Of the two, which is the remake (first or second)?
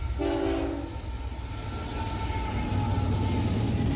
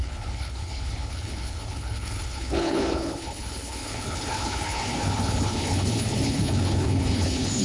second